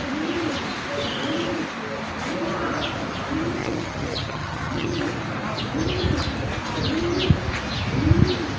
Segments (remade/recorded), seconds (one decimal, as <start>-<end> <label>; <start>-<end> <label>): 0.0-3.6 recorded; 3.6-5.0 remade; 5.0-8.6 recorded